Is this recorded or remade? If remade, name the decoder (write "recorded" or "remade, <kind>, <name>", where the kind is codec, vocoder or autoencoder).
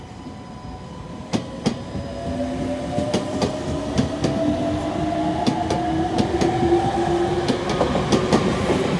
recorded